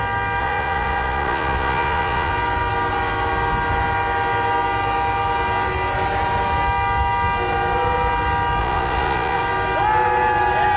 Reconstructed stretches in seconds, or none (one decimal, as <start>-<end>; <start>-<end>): 0.4-2.3; 8.6-9.4